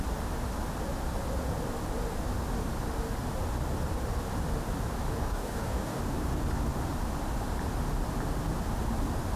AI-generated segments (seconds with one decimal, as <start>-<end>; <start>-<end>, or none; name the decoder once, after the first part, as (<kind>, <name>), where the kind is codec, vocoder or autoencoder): 5.2-6.0 (codec, DAC)